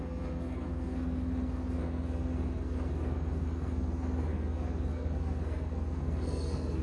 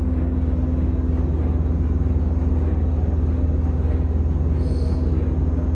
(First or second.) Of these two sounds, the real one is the second